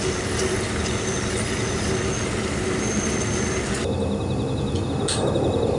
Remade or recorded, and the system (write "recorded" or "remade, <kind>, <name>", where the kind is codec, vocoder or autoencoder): recorded